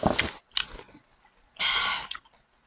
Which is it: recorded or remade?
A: recorded